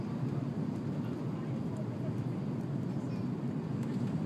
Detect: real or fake real